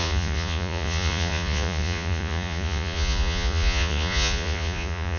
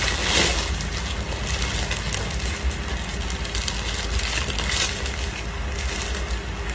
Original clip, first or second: second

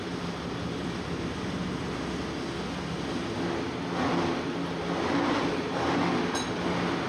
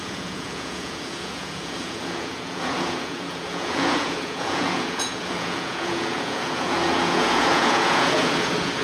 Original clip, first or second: first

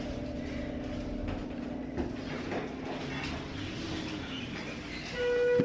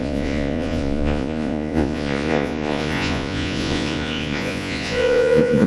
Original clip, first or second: first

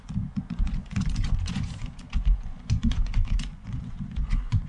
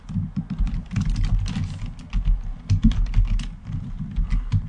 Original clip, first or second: second